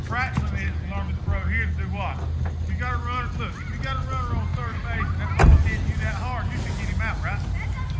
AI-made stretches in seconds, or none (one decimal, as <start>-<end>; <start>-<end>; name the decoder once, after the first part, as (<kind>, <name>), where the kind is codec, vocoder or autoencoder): none

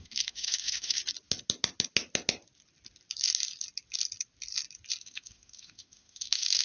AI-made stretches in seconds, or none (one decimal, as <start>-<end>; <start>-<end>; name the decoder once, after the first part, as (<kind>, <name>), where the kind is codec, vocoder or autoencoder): 0.0-1.0 (autoencoder, DAC-VAE); 5.0-6.6

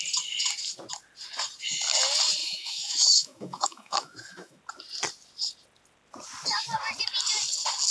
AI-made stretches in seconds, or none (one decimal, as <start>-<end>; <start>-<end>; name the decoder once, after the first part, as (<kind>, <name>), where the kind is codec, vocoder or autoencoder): 2.4-4.6 (autoencoder, DAC-VAE)

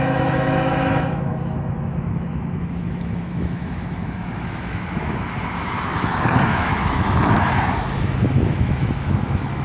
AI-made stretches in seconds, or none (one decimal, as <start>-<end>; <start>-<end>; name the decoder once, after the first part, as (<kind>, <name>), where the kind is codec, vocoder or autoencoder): 0.0-9.6 (autoencoder, DAC-VAE)